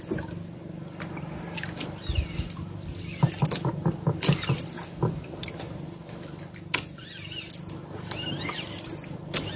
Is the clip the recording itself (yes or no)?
yes